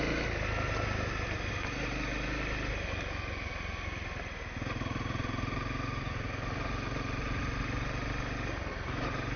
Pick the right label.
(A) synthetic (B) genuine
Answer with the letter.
B